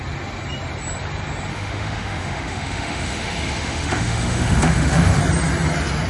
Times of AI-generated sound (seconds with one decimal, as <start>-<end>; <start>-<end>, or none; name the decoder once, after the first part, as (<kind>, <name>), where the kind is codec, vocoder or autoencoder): 1.5-5.2 (autoencoder, DAC-VAE)